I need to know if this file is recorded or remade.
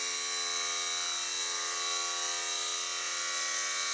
recorded